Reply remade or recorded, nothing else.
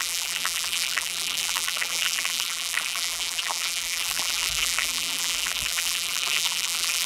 remade